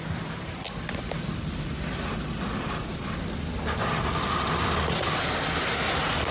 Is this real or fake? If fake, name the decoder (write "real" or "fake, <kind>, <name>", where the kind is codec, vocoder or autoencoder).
real